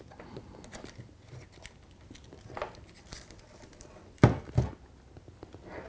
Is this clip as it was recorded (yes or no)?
yes